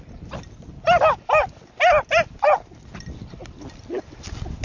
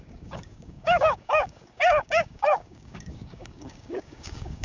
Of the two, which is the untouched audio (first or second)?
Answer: first